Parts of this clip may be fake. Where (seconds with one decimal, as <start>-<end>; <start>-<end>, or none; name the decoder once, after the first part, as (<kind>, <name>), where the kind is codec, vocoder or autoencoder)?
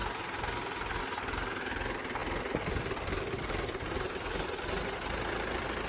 none